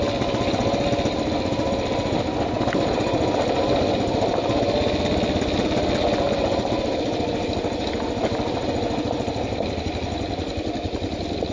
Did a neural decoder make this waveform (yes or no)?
no